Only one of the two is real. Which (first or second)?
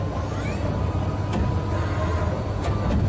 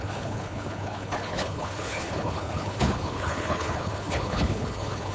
first